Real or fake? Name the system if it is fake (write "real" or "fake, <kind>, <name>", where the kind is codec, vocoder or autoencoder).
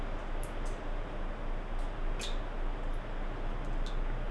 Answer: real